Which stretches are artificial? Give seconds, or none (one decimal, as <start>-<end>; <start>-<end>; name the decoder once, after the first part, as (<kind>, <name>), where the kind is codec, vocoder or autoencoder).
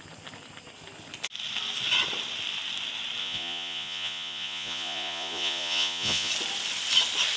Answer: 3.2-6.3 (vocoder, Vocos)